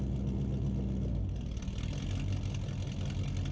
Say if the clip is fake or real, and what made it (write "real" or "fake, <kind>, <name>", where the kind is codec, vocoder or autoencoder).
real